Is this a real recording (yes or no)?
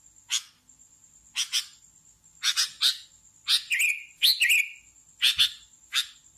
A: yes